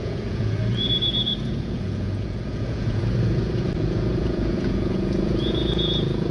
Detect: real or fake fake